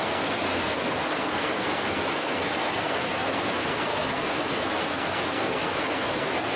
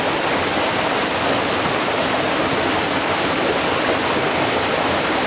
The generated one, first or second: first